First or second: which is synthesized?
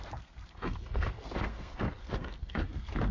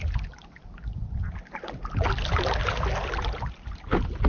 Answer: first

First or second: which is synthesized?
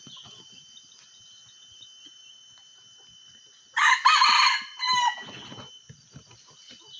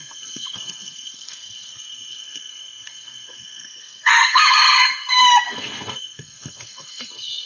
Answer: second